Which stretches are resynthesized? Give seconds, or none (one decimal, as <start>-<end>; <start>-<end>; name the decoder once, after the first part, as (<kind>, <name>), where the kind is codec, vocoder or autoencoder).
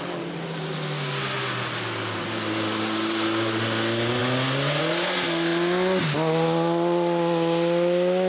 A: none